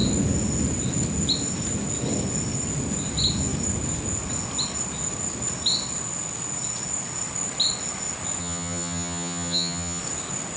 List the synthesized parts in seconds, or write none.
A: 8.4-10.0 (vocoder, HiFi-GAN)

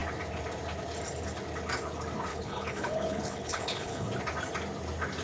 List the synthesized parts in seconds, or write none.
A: 2.3-4.1 (codec, HILCodec)

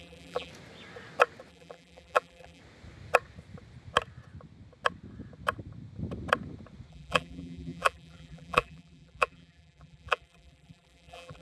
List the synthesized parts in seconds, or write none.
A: 0.0-0.5 (vocoder, BigVGAN v2); 1.5-2.6; 6.9-11.4